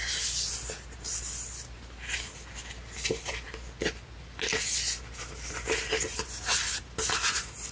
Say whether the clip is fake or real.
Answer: real